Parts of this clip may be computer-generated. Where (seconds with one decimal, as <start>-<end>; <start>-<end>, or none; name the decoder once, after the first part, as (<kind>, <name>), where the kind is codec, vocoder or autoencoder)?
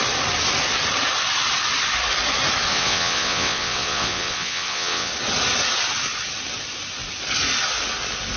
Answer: 2.7-5.1 (vocoder, WaveNeXt)